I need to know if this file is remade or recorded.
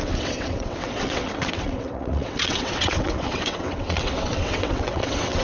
remade